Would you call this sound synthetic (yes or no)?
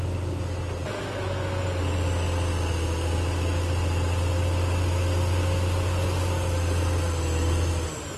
no